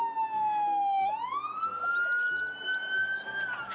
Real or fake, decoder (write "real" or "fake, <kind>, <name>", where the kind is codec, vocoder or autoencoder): real